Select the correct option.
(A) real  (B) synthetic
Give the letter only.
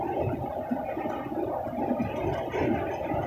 A